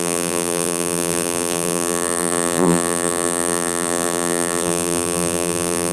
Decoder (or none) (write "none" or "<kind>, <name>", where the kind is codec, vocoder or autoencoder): vocoder, BigVGAN v2